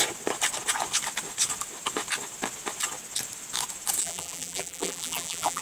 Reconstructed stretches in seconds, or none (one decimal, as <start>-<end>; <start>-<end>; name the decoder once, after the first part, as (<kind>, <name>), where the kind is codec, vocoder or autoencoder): 4.0-5.6 (vocoder, BigVGAN v2)